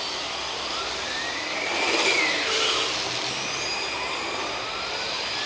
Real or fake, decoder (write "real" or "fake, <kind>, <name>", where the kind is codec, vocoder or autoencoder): real